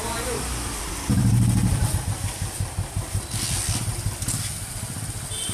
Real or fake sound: fake